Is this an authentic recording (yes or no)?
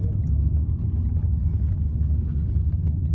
yes